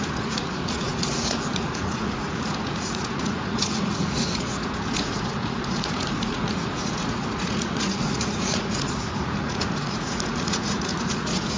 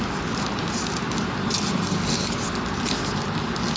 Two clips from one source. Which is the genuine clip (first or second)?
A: second